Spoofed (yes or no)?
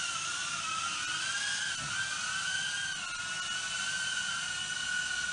no